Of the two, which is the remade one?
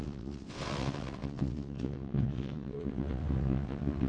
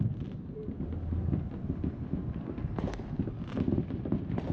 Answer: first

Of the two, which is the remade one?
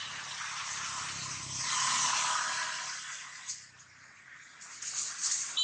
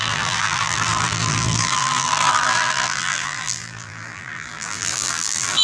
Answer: second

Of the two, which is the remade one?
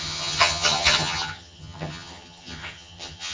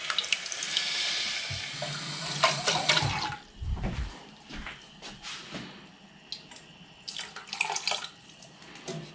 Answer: first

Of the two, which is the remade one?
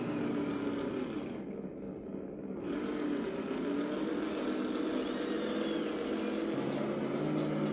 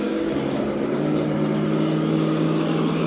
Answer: second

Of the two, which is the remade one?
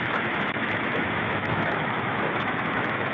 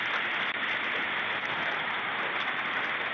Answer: first